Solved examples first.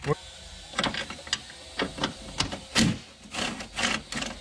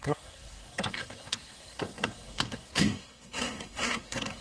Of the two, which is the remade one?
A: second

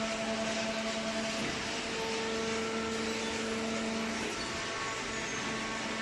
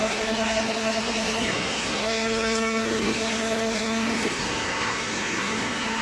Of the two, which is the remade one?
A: second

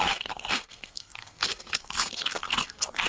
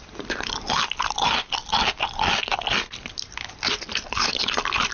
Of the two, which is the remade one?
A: first